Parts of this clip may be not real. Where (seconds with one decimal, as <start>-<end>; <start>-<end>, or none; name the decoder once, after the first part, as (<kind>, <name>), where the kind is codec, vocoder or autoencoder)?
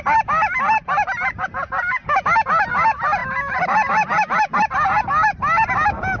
none